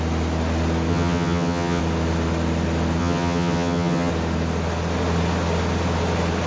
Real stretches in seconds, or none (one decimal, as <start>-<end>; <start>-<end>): 0.0-0.9; 1.8-3.0; 4.1-6.5